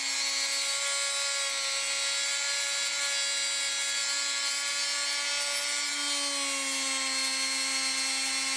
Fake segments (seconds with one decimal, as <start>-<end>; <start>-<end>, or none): none